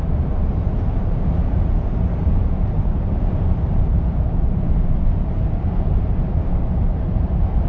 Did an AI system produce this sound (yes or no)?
yes